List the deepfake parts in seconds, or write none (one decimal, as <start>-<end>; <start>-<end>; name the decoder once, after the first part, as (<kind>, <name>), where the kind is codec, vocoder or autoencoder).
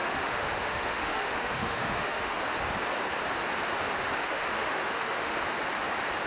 0.0-2.4 (autoencoder, DAC-VAE); 4.2-5.4